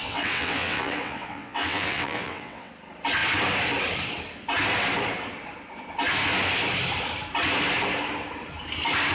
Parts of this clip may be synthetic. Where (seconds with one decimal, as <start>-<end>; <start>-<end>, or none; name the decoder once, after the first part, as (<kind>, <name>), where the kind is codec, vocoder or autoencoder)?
0.0-2.7 (vocoder, WaveNeXt)